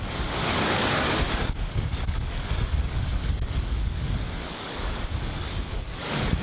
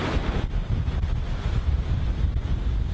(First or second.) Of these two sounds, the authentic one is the second